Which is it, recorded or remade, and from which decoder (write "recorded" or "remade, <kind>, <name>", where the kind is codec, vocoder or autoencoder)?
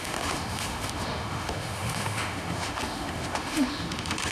remade, autoencoder, DAC-VAE